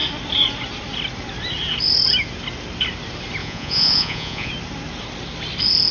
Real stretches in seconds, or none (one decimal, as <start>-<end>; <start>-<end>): 0.0-3.4; 4.5-5.9